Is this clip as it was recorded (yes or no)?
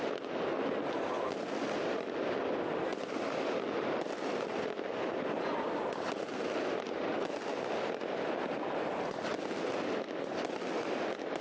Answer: yes